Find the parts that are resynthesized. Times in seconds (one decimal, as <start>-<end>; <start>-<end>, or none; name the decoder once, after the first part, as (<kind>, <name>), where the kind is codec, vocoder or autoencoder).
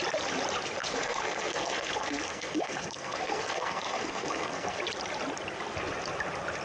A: 0.8-4.8 (codec, SNAC)